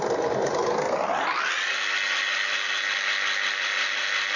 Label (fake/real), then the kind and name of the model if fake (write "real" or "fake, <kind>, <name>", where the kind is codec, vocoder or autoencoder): real